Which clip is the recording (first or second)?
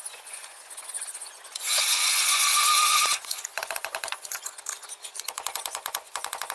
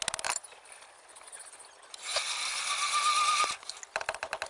second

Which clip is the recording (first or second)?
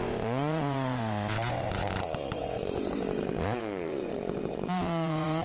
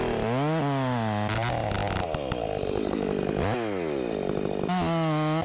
second